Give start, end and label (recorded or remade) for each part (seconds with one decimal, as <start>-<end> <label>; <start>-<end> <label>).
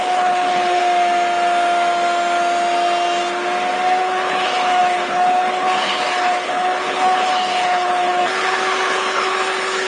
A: 0.0-0.8 remade; 0.8-4.0 recorded; 4.0-9.9 remade